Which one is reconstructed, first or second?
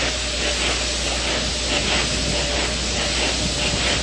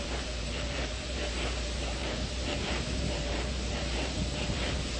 second